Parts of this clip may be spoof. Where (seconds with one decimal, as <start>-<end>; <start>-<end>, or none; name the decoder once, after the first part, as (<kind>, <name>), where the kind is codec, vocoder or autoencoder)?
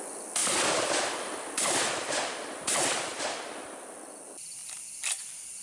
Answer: 0.4-3.2 (vocoder, BigVGAN v2)